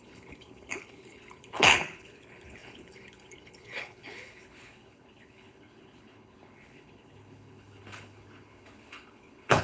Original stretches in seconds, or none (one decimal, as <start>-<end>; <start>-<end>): none